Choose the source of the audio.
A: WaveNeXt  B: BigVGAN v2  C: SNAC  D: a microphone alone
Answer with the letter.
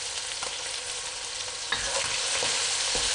D